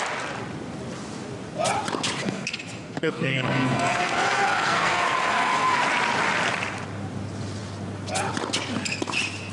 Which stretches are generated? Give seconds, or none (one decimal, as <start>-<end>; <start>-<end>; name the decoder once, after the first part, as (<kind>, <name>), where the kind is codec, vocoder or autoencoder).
2.2-5.8 (codec, SNAC)